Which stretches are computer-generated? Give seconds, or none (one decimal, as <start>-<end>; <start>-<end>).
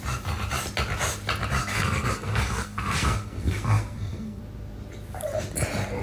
1.6-4.4